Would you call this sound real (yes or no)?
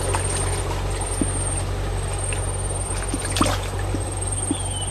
yes